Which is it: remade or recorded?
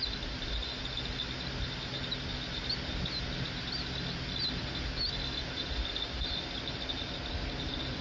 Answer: recorded